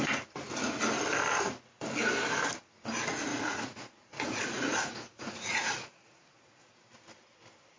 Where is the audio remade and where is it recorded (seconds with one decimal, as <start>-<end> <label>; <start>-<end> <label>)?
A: 0.0-3.3 recorded; 3.3-6.8 remade; 6.8-7.8 recorded